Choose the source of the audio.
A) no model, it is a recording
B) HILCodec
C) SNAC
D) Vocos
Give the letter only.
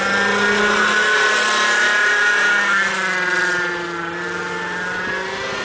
A